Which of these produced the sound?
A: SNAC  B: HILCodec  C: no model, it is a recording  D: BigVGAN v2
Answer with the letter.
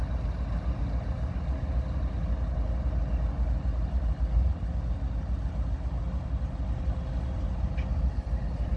C